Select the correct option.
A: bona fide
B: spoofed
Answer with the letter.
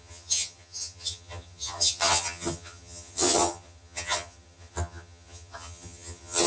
B